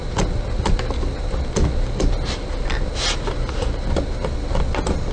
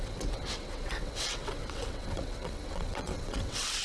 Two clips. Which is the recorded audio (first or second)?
first